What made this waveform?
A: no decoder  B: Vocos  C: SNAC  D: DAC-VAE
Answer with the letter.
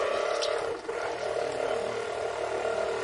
A